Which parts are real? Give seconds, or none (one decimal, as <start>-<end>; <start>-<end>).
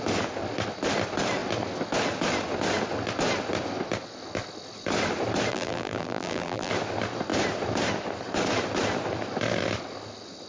0.0-5.5; 6.7-10.5